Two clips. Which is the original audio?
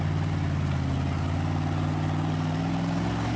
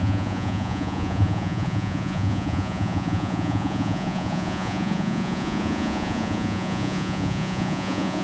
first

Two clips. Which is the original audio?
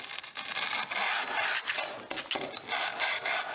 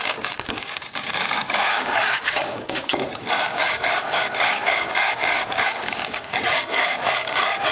first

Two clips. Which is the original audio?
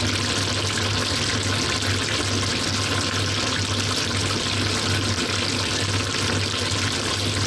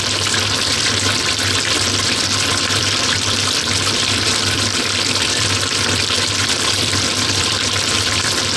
first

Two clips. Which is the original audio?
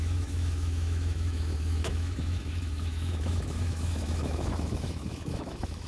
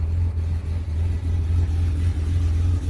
second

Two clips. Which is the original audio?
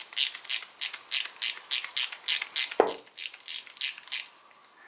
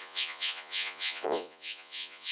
first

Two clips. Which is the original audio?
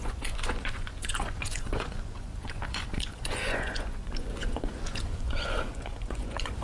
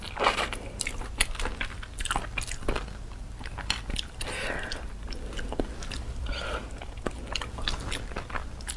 second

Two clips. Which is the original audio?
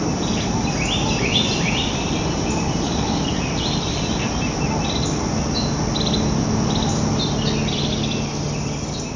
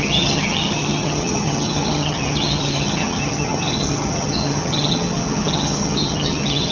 first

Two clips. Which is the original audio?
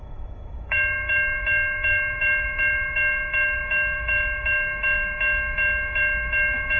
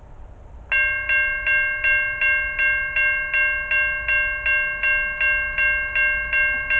second